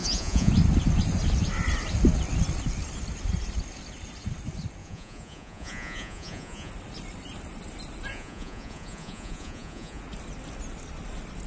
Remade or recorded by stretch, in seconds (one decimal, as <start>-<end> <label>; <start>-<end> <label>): 0.0-0.5 remade; 0.5-4.8 recorded; 4.8-6.7 remade; 6.7-8.1 recorded; 8.1-10.0 remade; 10.0-11.5 recorded

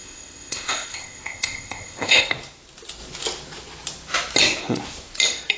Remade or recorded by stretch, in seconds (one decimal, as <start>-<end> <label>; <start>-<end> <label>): 0.0-2.2 remade; 2.2-5.6 recorded

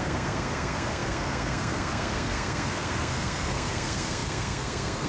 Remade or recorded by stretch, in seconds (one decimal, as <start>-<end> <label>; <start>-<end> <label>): 0.0-5.1 remade

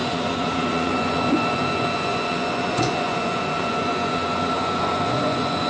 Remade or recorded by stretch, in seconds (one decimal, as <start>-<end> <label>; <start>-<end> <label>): 0.0-5.7 remade

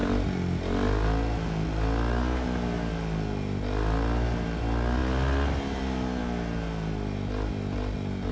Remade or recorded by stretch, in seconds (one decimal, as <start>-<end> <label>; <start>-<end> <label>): 0.0-8.3 recorded

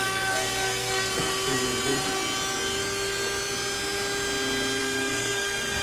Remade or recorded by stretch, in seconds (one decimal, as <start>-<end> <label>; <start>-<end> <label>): 0.0-1.3 remade; 1.3-4.8 recorded; 4.8-5.8 remade

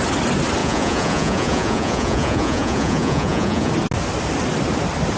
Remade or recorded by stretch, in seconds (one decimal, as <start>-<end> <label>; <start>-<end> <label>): 0.0-0.6 recorded; 0.6-3.7 remade; 3.7-5.2 recorded

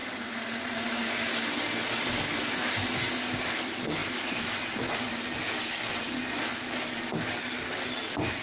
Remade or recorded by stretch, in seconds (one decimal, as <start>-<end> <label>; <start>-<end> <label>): 0.0-8.4 recorded